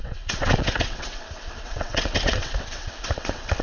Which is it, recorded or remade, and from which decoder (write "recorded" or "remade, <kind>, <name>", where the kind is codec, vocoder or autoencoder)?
remade, vocoder, WaveNeXt